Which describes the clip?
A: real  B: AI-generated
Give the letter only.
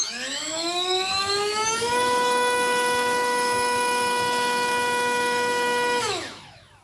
B